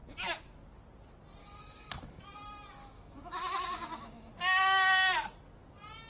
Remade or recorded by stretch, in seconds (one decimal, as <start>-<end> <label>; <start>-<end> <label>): 0.0-1.4 recorded; 1.4-2.2 remade; 2.2-2.8 recorded; 2.8-4.3 remade; 4.3-6.1 recorded